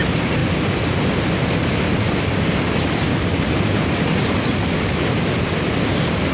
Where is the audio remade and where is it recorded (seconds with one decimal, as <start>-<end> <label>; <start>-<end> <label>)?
0.0-6.3 recorded